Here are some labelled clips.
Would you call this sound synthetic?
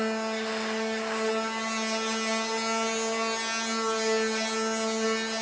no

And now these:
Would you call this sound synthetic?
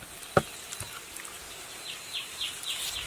no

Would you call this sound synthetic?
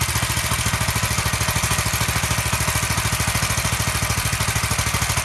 no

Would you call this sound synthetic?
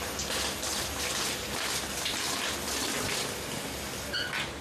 no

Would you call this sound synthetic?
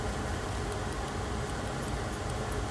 no